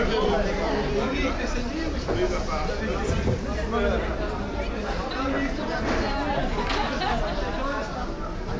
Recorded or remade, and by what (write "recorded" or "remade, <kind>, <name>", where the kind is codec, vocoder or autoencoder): recorded